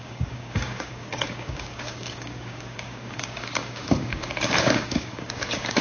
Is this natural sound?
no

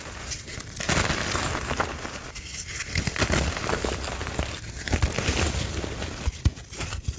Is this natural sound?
yes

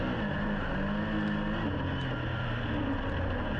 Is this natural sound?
yes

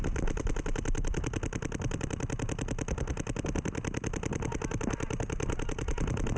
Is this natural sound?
yes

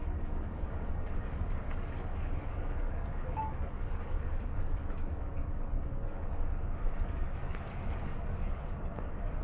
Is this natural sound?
no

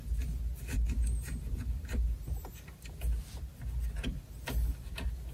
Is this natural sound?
yes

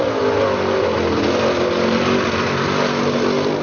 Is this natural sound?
yes